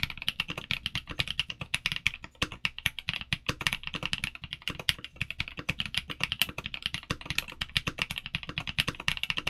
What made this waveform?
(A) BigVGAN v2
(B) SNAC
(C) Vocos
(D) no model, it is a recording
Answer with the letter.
D